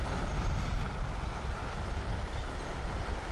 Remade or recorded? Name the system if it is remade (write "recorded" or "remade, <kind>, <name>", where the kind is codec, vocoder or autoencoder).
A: recorded